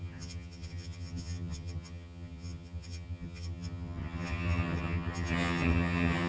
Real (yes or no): no